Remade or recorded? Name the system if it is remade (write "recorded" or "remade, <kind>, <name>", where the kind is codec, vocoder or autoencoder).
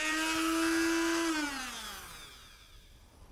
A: recorded